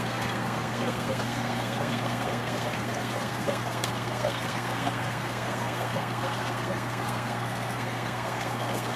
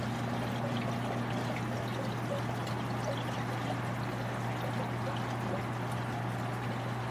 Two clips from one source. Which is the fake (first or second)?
first